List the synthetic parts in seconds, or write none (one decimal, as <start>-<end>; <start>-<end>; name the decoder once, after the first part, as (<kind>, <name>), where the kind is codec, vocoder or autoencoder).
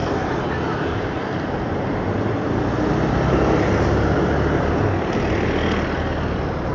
none